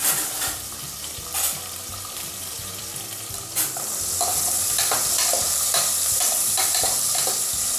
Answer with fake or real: fake